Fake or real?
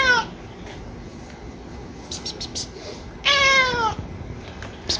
real